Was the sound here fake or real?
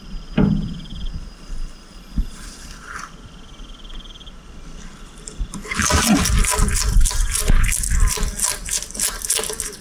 real